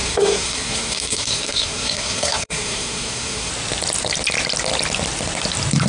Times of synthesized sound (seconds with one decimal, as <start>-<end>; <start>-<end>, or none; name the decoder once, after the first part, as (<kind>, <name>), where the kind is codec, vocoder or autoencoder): 0.0-3.5 (codec, SNAC)